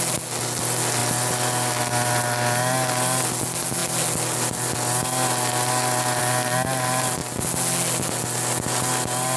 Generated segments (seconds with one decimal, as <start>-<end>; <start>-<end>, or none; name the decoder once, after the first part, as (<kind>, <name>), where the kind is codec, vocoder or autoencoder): none